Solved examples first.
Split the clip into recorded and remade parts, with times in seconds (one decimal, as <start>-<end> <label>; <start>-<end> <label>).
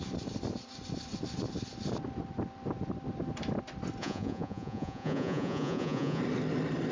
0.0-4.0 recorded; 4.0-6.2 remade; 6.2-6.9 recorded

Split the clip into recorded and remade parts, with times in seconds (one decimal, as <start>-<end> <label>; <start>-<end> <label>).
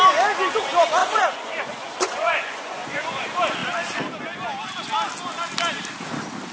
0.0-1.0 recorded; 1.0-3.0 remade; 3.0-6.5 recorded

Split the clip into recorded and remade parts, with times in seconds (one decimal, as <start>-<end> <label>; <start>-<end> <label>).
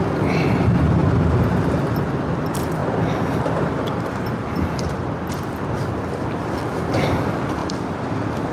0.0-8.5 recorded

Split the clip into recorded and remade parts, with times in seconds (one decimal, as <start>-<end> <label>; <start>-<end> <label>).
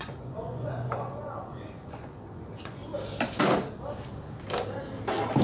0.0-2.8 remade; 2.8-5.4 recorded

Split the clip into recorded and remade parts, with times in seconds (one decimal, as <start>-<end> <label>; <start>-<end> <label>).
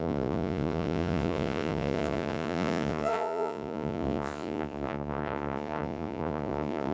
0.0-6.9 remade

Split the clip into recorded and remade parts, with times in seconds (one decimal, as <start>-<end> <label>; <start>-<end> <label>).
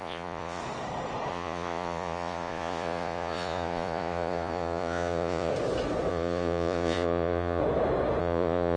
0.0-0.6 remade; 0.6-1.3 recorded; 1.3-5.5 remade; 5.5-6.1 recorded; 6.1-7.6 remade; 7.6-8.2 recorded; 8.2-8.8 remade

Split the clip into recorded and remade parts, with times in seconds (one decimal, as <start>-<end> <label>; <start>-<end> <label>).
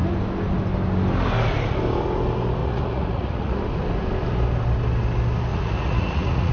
0.0-2.6 recorded; 2.6-3.6 remade; 3.6-5.5 recorded; 5.5-6.5 remade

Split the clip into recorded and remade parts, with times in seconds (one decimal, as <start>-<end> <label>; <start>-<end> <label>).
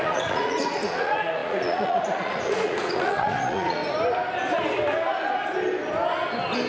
0.0-3.8 remade; 3.8-6.7 recorded